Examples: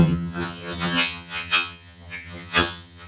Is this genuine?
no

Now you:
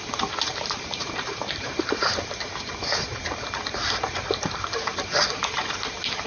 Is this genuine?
no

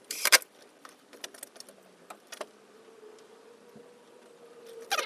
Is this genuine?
yes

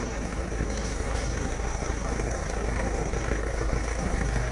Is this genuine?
no